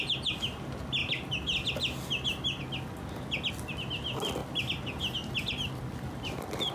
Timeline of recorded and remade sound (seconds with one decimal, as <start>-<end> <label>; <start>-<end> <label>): 0.0-6.7 recorded